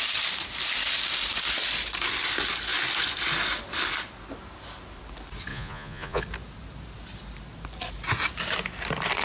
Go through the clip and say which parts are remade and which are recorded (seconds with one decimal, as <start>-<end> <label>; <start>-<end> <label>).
0.0-5.5 recorded; 5.5-6.2 remade; 6.2-9.2 recorded